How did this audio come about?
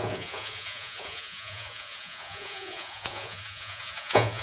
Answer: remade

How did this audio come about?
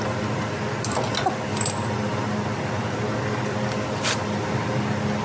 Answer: recorded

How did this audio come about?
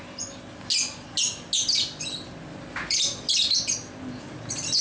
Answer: recorded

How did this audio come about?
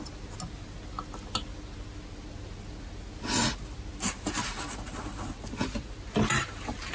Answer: recorded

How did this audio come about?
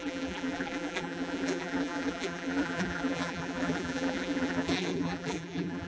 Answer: remade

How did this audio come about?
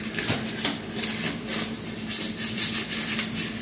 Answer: recorded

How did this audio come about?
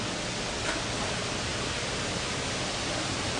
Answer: recorded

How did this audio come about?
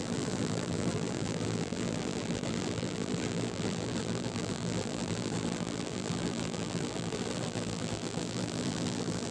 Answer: remade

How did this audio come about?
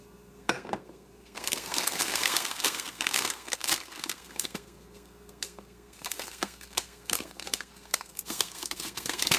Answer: remade